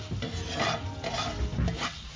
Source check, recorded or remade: recorded